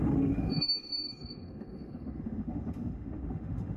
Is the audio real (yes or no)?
no